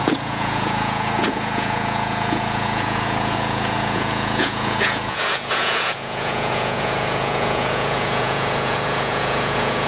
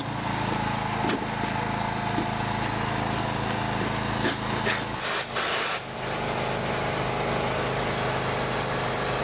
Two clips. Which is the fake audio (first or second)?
first